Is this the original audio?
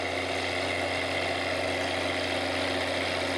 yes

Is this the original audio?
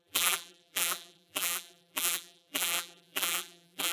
no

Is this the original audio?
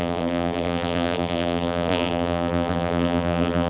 no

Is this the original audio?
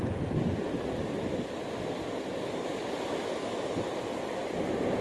yes